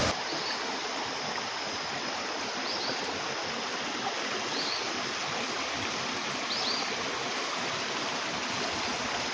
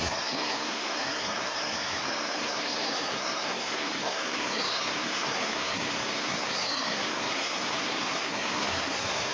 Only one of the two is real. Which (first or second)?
first